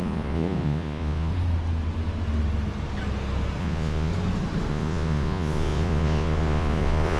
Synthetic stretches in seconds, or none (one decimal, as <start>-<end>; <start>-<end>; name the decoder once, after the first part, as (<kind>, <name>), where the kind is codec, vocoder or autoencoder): 0.0-1.3 (vocoder, Vocos); 3.6-4.1; 4.7-7.2